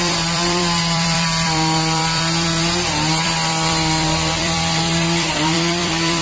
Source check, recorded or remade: remade